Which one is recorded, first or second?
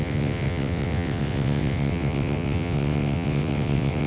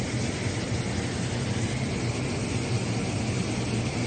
second